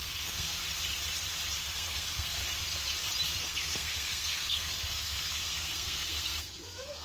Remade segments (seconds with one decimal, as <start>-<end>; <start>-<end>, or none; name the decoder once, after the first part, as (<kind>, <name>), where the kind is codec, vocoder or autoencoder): 0.0-0.6 (codec, SNAC); 1.6-2.4; 3.4-7.0